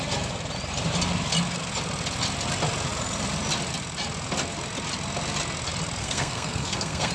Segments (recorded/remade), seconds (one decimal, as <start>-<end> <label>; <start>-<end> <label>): 0.0-6.0 recorded; 6.0-7.1 remade

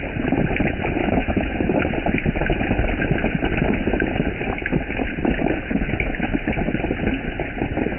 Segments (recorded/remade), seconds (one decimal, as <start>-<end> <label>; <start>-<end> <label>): 0.0-1.0 recorded; 1.0-1.8 remade; 1.8-8.0 recorded

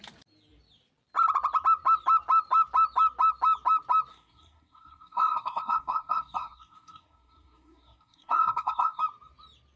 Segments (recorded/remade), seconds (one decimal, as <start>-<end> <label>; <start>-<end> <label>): 0.0-4.1 recorded; 4.1-9.0 remade; 9.0-9.8 recorded

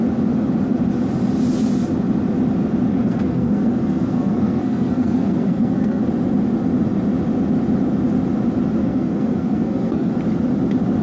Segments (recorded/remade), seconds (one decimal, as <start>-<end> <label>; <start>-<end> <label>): 0.0-2.9 recorded; 2.9-6.0 remade; 6.0-8.8 recorded; 8.8-10.1 remade; 10.1-11.0 recorded

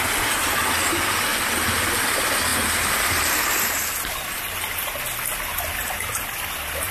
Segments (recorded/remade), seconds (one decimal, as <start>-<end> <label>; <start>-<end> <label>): 0.0-1.3 recorded; 1.3-1.9 remade; 1.9-2.5 recorded; 2.5-3.4 remade; 3.4-6.9 recorded

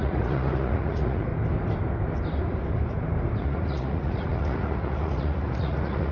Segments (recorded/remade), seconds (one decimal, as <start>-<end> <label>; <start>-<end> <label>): 0.0-1.3 remade; 1.3-3.4 recorded; 3.4-6.1 remade

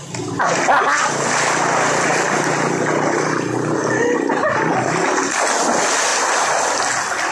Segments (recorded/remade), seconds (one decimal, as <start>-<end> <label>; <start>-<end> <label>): 0.0-7.3 recorded

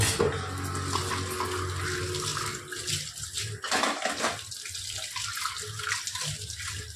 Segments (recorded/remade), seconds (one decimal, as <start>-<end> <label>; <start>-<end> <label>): 0.0-7.0 recorded